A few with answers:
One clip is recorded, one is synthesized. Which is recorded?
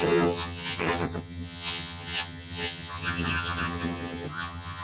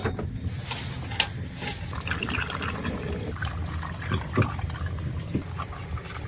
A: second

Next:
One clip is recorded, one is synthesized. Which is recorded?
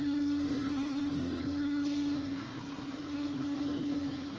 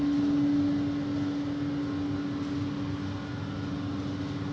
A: second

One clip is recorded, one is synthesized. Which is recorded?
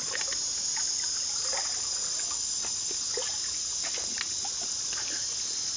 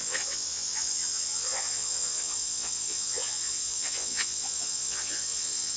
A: first